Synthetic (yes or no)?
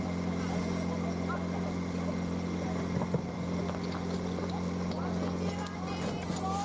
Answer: no